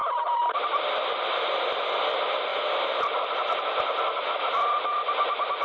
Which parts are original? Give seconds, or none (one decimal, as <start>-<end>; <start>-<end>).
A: 0.7-2.5; 3.6-5.6

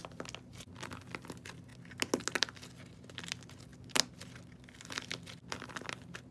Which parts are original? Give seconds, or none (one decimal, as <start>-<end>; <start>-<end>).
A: 0.0-6.3

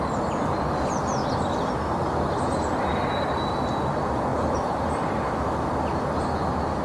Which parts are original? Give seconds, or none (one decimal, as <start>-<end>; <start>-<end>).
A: 0.0-4.3; 5.5-6.8

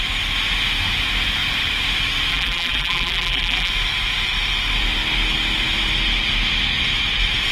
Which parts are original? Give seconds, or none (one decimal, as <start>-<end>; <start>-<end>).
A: 0.0-2.3; 3.7-7.5

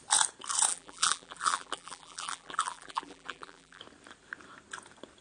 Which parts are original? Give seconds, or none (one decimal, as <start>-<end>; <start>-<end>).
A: 0.0-0.7; 3.8-5.2

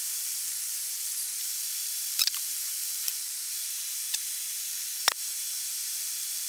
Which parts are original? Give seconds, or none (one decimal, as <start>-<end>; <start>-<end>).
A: 4.9-5.7

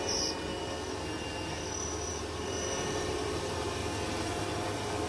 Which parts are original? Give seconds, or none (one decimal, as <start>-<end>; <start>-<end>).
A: 0.5-2.1; 3.8-5.1